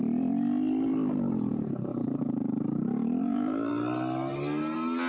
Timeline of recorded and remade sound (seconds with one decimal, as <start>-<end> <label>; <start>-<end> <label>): 0.0-3.7 remade; 3.7-5.1 recorded